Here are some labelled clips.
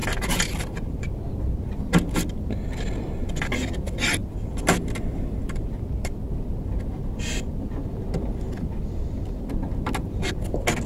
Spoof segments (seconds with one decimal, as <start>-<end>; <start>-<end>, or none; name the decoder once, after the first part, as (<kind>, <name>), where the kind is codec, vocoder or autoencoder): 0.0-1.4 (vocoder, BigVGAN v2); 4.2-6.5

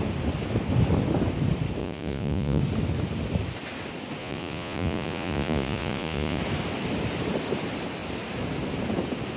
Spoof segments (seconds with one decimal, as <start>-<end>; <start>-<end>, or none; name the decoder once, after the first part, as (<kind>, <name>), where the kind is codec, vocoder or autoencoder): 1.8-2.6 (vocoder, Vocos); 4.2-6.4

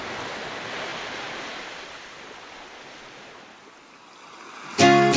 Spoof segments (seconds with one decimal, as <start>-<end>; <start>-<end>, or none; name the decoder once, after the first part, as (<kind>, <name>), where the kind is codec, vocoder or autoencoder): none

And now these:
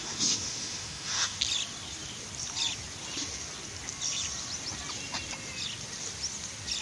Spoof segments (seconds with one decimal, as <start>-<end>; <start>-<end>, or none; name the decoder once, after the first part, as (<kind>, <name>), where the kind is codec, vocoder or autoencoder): 0.0-1.4 (autoencoder, DAC-VAE)

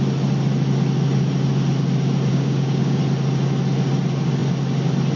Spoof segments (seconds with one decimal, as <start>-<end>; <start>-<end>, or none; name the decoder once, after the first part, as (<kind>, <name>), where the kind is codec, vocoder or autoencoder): 2.3-3.0 (codec, DAC)

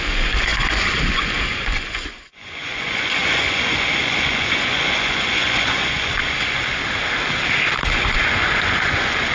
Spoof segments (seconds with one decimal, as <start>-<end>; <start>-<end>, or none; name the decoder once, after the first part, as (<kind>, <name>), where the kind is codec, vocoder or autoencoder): 0.0-6.8 (vocoder, Vocos); 7.9-9.3

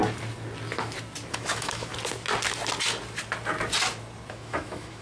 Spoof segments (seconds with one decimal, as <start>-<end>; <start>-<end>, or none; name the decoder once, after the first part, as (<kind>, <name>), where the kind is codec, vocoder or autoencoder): 1.3-1.9 (autoencoder, DAC-VAE); 4.3-5.0

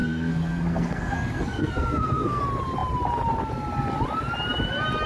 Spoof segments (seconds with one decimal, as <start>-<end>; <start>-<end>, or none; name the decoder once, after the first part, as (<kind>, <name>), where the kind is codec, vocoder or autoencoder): 0.0-2.4 (codec, SNAC)